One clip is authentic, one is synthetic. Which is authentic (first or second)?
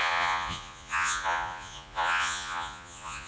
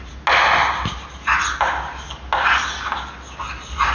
second